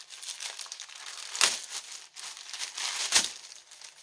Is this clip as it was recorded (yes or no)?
yes